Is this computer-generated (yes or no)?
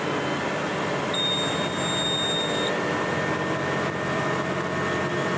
no